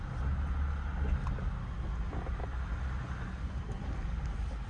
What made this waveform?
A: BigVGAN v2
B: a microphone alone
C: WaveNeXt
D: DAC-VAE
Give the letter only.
B